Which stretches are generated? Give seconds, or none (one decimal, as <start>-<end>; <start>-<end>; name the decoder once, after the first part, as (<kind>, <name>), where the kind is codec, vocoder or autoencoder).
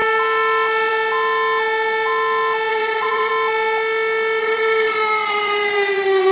2.7-3.3 (vocoder, WaveNeXt); 4.4-6.3